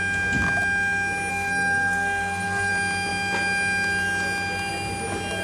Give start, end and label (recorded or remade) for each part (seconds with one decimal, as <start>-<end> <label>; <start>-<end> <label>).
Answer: 0.0-1.3 recorded; 1.3-2.7 remade; 2.7-5.4 recorded